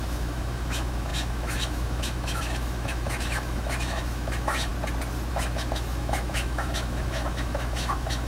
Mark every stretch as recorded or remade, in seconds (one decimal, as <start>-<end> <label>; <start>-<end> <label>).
0.0-4.7 remade; 4.7-5.3 recorded; 5.3-8.3 remade